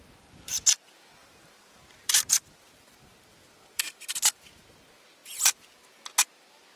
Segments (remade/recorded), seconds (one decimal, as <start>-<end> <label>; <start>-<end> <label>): 0.0-1.2 recorded; 1.2-2.9 remade; 2.9-3.4 recorded; 3.4-4.7 remade; 4.7-6.8 recorded